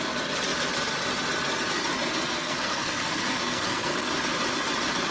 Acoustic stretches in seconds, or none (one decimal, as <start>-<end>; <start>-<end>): 0.0-2.4; 4.1-5.1